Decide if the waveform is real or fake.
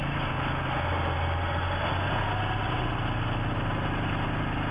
real